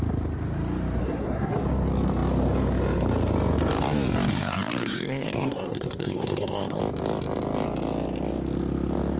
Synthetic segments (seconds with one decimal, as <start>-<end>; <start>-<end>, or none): 1.0-1.6; 4.3-6.8

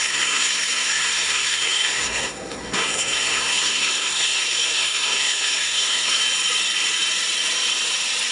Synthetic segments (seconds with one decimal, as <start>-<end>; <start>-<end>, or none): 0.0-6.2

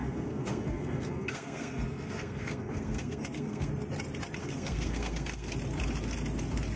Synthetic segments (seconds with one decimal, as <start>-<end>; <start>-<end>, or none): 0.0-3.7; 4.4-5.5

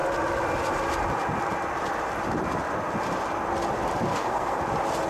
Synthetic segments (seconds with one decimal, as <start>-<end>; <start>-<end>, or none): 4.1-4.6

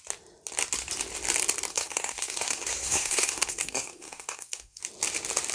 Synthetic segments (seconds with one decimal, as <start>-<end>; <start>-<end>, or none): 1.7-4.8

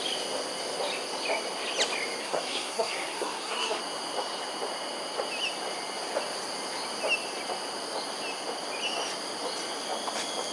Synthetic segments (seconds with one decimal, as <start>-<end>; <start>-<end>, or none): 2.2-3.8